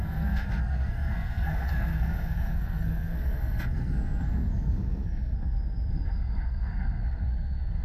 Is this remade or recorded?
remade